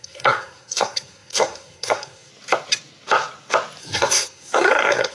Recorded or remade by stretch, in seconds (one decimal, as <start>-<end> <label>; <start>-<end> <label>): 0.0-2.3 remade; 2.3-3.8 recorded; 3.8-5.1 remade